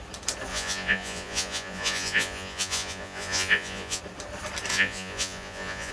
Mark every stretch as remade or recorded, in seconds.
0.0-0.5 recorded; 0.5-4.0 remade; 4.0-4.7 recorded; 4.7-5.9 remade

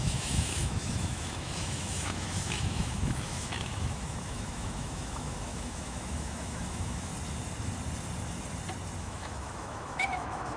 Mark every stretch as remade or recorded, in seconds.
0.0-7.1 remade; 7.1-9.0 recorded; 9.0-10.6 remade

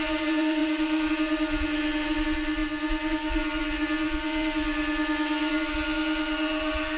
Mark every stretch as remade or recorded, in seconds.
0.0-7.0 recorded

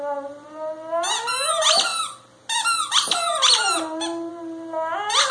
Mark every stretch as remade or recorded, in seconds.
0.0-5.3 recorded